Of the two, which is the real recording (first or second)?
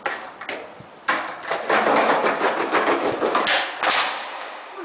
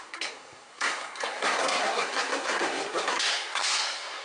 first